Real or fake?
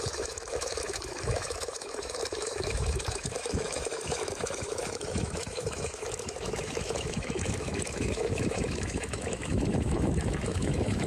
fake